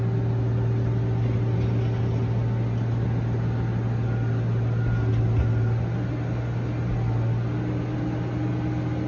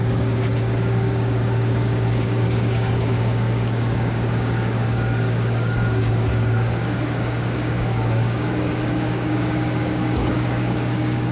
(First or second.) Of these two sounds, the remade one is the second